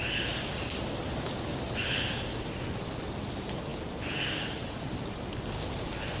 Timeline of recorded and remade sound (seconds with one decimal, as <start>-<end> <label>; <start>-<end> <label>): 0.0-6.2 recorded